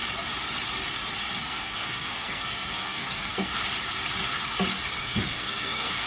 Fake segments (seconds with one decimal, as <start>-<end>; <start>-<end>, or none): 1.4-3.6; 5.0-6.1